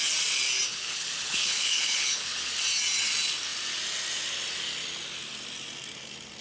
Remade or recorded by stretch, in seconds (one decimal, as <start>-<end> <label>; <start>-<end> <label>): 0.0-0.7 recorded; 0.7-2.5 remade; 2.5-6.4 recorded